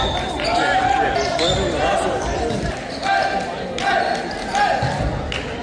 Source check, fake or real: real